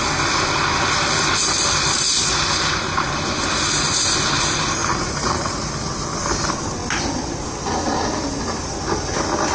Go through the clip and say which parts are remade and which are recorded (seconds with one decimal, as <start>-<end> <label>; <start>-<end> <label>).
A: 0.0-4.8 recorded; 4.8-5.6 remade; 5.6-9.5 recorded